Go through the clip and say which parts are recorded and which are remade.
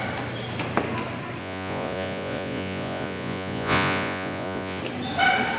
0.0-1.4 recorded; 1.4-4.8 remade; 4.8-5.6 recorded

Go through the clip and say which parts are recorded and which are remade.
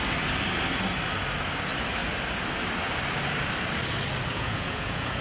0.0-4.3 recorded; 4.3-5.2 remade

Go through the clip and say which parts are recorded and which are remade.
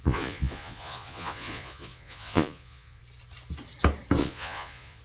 0.0-3.0 remade; 3.0-4.2 recorded; 4.2-5.0 remade